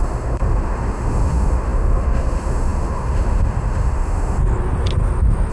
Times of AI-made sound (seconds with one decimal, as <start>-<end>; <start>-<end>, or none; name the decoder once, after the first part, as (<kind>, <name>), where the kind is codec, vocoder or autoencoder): 0.0-4.4 (autoencoder, DAC-VAE)